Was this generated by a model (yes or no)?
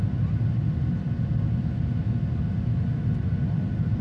no